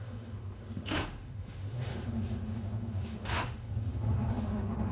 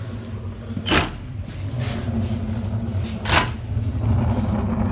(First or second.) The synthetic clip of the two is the first